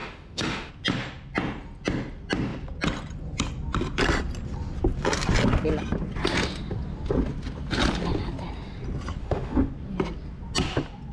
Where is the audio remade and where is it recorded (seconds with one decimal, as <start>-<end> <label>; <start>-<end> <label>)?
0.0-0.7 remade; 0.7-9.2 recorded; 9.2-9.7 remade; 9.7-11.1 recorded

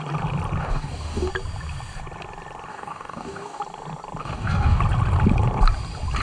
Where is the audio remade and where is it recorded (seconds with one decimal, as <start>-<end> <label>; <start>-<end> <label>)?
0.0-0.6 recorded; 0.6-1.3 remade; 1.3-2.7 recorded; 2.7-3.6 remade; 3.6-4.2 recorded; 4.2-4.8 remade; 4.8-6.2 recorded

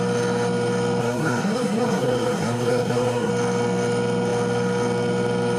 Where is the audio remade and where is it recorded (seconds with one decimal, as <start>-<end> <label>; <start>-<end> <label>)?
0.0-1.0 recorded; 1.0-3.3 remade; 3.3-5.6 recorded

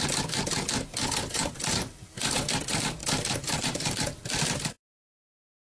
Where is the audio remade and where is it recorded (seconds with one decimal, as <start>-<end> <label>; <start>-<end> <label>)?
0.0-1.4 recorded; 1.4-2.1 remade; 2.1-3.0 recorded; 3.0-4.4 remade; 4.4-5.6 recorded

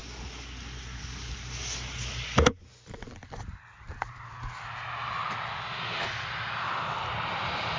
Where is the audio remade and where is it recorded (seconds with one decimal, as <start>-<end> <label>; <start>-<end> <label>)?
0.0-7.8 recorded

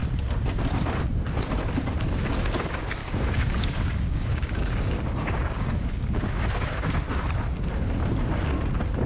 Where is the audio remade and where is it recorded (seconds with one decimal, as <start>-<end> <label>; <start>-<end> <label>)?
0.0-3.0 recorded; 3.0-6.4 remade; 6.4-9.1 recorded

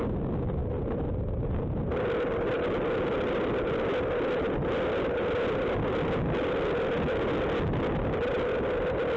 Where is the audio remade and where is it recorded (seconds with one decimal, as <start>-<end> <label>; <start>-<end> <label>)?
0.0-9.2 recorded